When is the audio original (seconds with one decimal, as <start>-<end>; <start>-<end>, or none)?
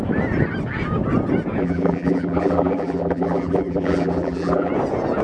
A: 0.0-1.6; 4.7-5.2